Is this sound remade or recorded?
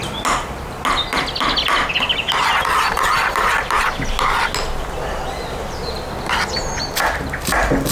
recorded